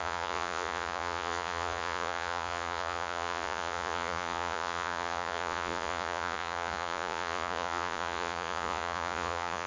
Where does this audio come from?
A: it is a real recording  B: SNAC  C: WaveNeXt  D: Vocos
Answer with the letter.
D